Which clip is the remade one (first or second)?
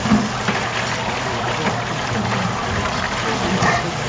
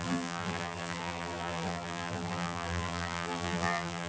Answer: second